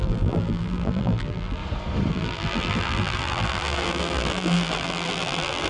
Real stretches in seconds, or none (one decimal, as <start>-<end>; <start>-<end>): 1.6-2.1